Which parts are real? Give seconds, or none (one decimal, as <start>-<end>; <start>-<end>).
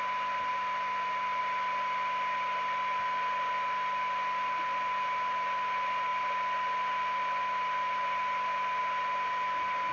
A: 0.0-9.9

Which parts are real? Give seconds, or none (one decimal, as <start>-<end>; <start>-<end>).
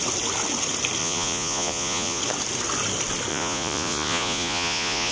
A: 0.0-1.0; 2.2-3.3